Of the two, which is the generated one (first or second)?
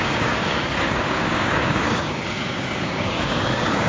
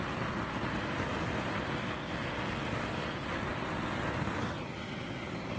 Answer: first